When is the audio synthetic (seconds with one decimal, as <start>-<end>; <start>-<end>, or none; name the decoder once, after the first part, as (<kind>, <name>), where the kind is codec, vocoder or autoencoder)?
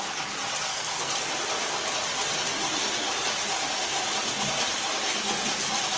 0.7-1.3 (codec, SNAC)